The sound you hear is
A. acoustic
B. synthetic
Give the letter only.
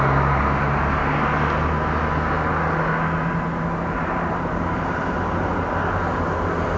A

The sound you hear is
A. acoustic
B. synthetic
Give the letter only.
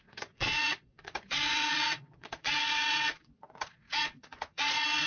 B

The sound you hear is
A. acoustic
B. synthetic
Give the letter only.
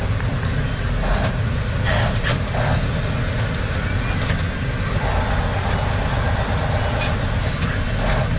A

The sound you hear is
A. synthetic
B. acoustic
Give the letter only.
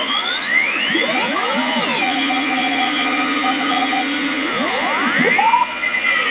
A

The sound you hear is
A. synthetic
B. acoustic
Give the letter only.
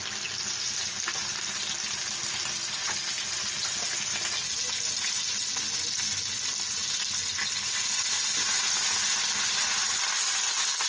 B